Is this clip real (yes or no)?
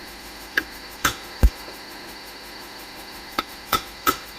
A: no